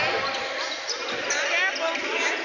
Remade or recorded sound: recorded